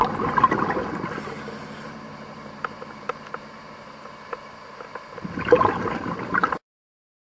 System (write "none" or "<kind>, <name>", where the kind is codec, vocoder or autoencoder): vocoder, BigVGAN v2